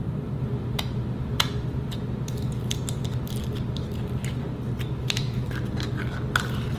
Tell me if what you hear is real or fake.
real